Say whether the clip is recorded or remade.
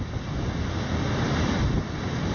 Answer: recorded